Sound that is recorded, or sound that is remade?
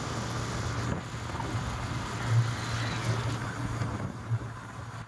recorded